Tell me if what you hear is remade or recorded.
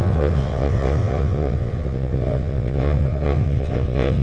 remade